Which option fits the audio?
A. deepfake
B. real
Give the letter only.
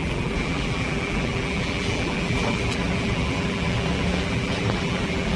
A